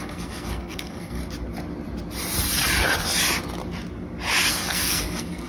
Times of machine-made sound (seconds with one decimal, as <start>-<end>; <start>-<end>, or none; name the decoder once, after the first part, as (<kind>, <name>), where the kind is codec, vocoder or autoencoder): 0.0-1.2 (codec, SNAC); 4.5-5.5